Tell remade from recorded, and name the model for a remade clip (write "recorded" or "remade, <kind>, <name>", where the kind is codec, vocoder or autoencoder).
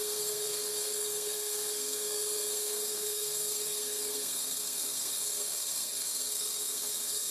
remade, codec, SNAC